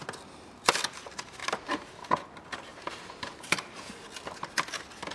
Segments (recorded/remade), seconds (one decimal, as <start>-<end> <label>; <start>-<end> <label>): 0.0-1.4 recorded; 1.4-2.0 remade; 2.0-2.7 recorded; 2.7-3.8 remade; 3.8-5.1 recorded